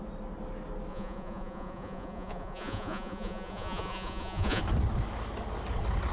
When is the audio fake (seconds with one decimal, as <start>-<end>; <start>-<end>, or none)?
0.9-4.6